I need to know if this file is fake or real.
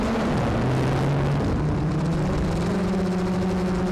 real